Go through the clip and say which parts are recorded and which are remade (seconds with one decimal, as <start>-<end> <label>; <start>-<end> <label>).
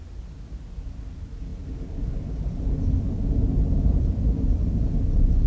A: 0.0-5.5 recorded